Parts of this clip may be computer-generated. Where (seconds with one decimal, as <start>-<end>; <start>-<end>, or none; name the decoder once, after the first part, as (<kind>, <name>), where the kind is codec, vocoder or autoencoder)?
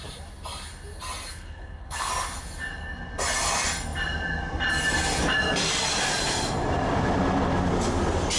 1.3-2.1 (codec, HILCodec)